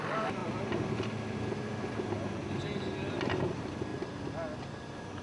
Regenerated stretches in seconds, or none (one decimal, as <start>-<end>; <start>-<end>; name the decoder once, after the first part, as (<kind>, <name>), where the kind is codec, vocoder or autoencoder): none